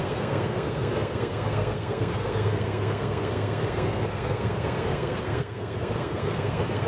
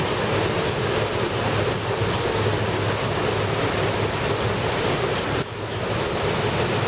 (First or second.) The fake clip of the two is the first